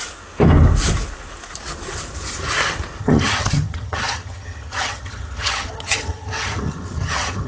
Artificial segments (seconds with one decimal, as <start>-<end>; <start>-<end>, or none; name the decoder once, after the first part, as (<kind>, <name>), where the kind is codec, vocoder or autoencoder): 3.0-7.5 (vocoder, HiFi-GAN)